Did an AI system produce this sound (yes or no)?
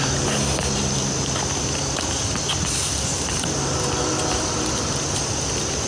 no